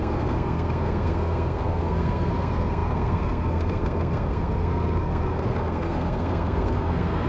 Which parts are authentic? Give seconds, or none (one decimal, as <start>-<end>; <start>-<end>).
none